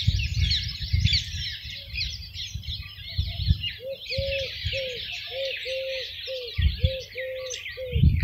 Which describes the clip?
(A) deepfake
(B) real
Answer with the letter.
B